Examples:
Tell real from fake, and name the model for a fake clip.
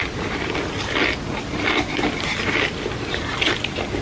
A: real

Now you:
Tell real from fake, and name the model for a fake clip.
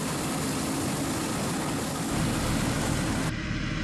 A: real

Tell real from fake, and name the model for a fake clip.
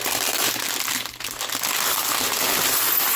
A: real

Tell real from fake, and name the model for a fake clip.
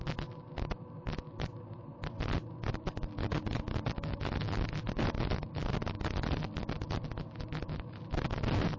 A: real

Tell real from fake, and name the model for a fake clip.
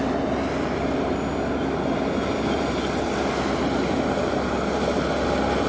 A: real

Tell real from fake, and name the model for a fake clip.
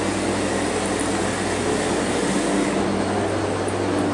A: real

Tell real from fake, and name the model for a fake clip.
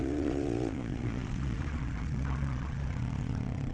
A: fake, vocoder, Vocos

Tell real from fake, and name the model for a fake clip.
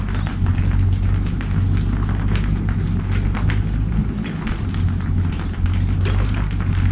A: real